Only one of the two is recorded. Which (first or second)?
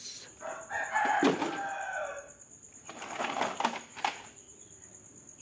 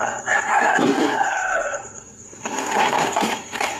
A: first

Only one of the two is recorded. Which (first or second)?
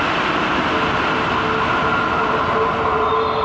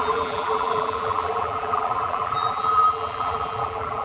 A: first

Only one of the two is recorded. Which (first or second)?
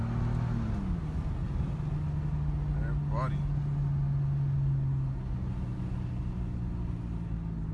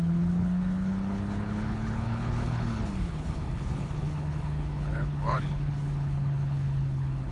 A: first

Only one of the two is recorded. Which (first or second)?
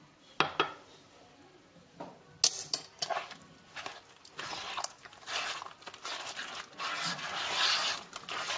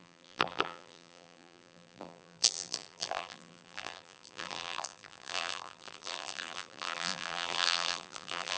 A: first